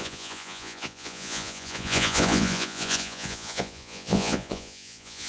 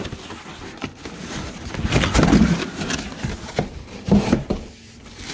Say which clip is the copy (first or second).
first